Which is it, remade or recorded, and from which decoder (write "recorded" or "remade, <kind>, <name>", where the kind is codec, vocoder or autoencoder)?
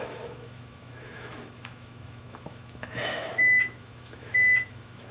remade, autoencoder, DAC-VAE